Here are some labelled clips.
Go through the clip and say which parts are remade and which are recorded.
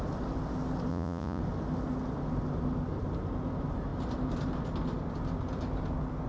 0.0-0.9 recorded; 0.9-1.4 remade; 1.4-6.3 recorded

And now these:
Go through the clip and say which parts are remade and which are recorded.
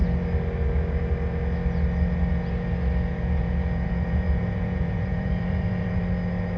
0.0-3.1 recorded; 3.1-6.0 remade; 6.0-6.6 recorded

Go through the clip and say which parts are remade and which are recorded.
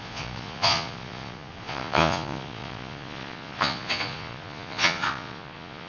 0.0-5.9 remade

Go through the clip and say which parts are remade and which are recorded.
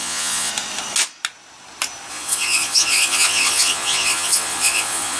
0.0-0.5 remade; 0.5-2.1 recorded; 2.1-5.2 remade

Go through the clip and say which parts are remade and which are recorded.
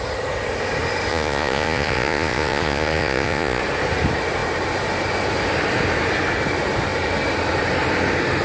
0.0-1.1 recorded; 1.1-3.6 remade; 3.6-8.4 recorded